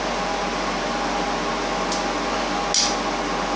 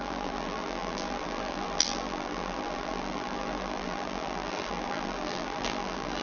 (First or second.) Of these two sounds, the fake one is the second